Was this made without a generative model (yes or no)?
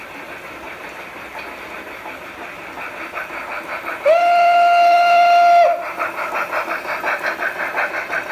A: yes